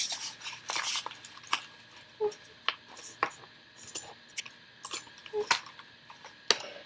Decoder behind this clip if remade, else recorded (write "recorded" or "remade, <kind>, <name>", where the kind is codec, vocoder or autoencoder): recorded